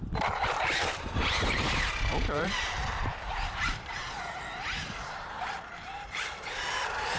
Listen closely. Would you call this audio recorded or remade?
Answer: remade